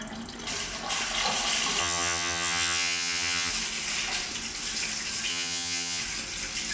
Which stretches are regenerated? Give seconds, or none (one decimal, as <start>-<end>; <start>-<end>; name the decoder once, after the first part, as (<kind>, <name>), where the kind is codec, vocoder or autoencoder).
1.8-3.5 (vocoder, HiFi-GAN); 5.3-6.0